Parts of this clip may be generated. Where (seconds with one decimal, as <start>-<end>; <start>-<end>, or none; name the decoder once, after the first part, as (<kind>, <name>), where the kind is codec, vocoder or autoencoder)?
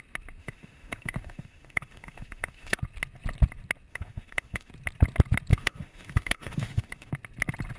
0.4-2.8 (autoencoder, DAC-VAE); 3.9-4.7; 5.5-7.1